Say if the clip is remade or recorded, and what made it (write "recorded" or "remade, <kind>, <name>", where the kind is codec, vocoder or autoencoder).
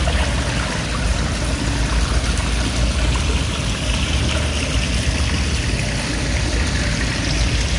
recorded